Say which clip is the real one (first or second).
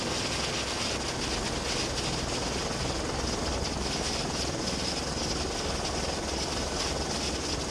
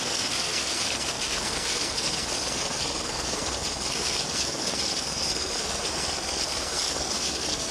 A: first